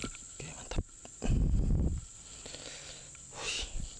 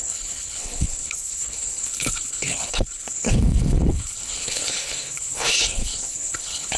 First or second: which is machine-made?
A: second